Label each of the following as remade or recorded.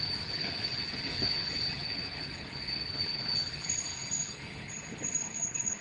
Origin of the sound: remade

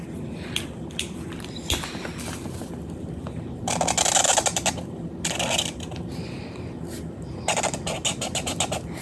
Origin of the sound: recorded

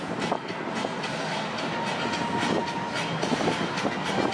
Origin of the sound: recorded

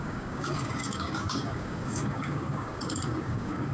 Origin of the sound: remade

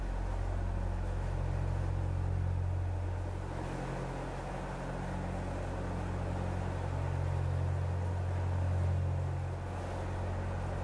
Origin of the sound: recorded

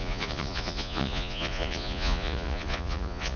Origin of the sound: remade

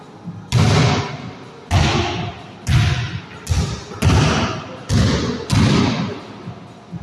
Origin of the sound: recorded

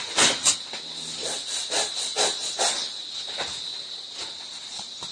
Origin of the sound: recorded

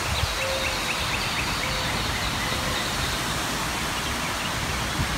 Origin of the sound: recorded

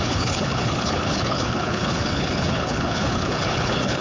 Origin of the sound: remade